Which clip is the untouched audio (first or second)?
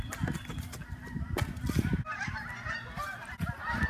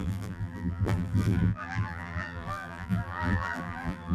first